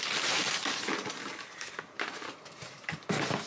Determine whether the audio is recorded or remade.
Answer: recorded